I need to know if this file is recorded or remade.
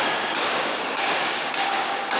remade